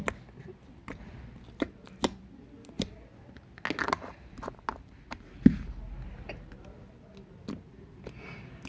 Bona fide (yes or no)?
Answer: yes